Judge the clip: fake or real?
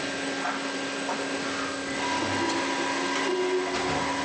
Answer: real